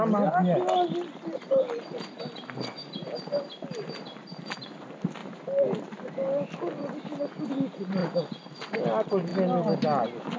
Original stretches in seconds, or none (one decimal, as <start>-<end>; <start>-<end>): 0.0-10.4